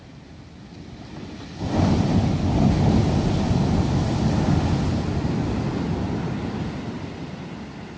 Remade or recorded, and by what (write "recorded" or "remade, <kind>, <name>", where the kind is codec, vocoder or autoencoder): recorded